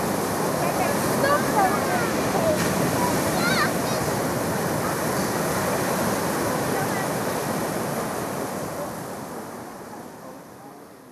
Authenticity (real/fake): real